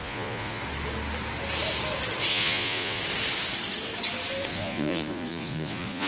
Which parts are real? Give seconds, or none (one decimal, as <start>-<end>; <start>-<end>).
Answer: 0.6-2.3; 3.0-4.5